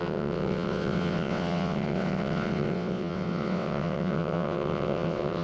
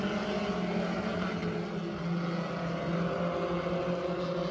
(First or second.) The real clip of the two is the second